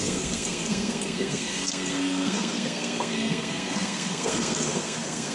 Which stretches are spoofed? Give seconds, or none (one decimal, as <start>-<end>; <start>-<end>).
0.0-5.3